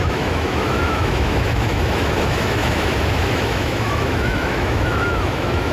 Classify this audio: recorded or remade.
remade